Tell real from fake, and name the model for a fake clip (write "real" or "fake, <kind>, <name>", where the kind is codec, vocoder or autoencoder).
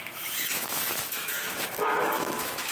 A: fake, autoencoder, DAC-VAE